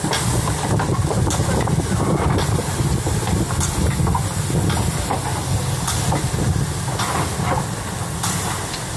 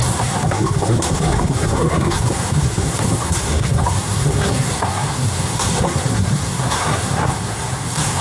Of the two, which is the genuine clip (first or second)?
first